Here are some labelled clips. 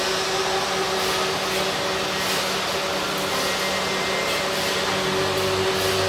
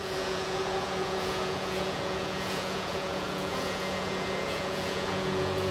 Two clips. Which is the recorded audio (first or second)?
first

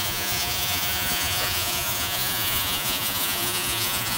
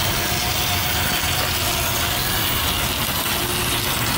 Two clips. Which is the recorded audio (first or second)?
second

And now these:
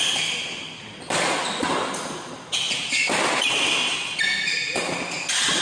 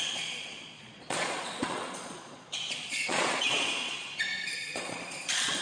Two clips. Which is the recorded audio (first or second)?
first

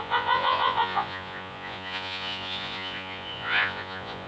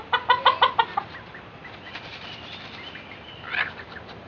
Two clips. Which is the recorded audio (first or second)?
second